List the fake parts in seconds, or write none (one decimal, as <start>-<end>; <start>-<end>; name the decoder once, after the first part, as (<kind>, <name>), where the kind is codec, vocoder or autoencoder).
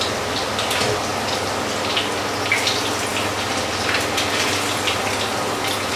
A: none